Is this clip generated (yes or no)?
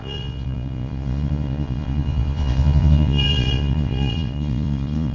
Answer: yes